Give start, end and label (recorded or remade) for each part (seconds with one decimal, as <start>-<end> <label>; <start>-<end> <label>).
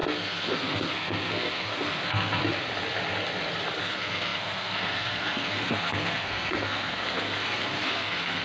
0.0-2.4 remade; 2.4-3.8 recorded; 3.8-8.4 remade